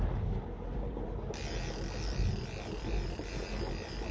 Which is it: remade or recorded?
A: recorded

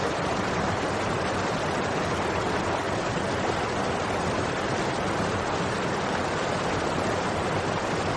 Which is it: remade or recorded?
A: remade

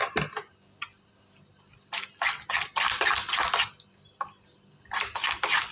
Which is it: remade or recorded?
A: recorded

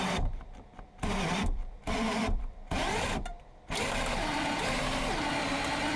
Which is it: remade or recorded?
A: remade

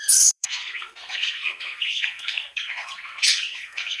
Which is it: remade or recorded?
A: remade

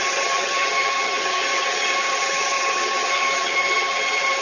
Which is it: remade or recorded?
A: remade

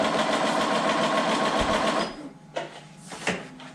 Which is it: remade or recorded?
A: recorded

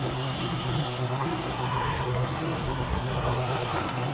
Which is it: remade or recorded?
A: remade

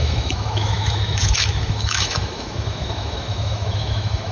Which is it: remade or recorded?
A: remade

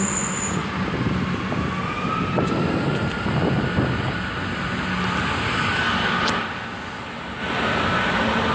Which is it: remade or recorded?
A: recorded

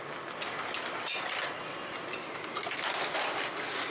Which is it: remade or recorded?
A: recorded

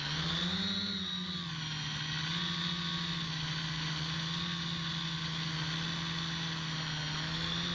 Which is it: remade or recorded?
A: recorded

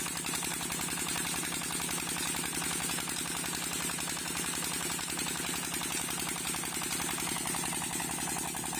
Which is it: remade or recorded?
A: recorded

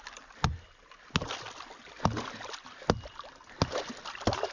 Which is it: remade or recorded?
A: recorded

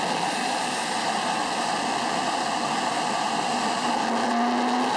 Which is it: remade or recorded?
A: recorded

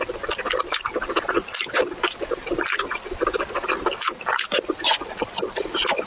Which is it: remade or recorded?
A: recorded